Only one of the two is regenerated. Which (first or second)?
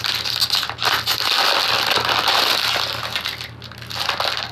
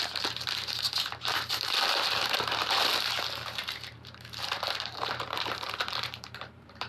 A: second